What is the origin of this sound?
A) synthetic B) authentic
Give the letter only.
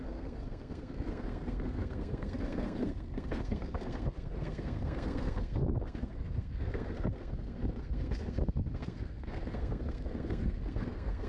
A